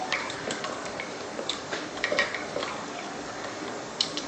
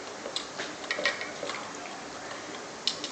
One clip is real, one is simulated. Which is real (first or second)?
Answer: second